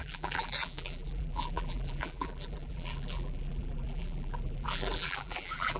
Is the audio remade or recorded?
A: remade